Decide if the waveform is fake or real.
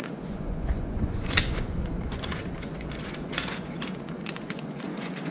fake